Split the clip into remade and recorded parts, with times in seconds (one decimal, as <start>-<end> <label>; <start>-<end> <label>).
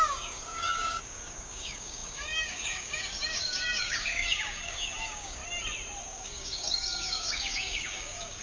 0.0-5.4 remade; 5.4-6.0 recorded; 6.0-8.4 remade